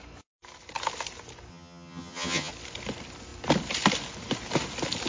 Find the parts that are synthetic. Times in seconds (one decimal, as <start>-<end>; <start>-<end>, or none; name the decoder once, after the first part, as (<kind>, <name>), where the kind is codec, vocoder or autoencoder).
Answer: 1.5-2.5 (vocoder, HiFi-GAN)